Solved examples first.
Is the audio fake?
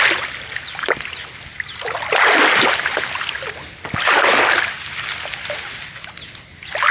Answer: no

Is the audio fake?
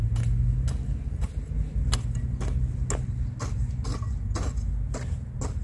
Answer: no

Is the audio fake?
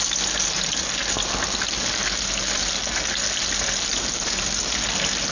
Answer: no